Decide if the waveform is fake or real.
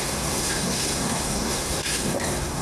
fake